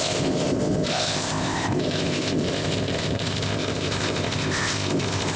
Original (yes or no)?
no